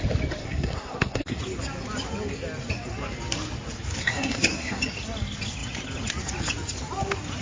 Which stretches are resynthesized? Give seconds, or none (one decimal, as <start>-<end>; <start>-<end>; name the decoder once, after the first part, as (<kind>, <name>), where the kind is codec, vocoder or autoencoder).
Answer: 0.4-1.4 (codec, SNAC); 4.0-4.8